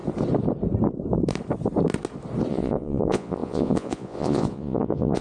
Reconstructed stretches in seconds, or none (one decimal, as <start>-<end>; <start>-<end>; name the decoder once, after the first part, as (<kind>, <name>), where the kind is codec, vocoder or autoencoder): 2.5-5.2 (vocoder, Vocos)